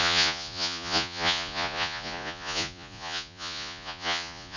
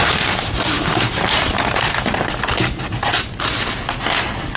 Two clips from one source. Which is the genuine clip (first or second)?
second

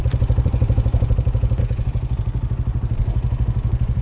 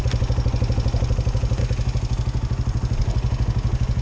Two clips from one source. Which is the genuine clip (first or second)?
second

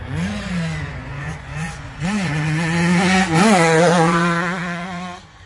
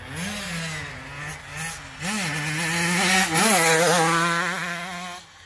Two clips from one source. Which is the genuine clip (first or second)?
second